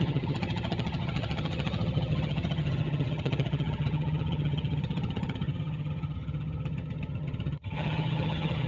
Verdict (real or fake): fake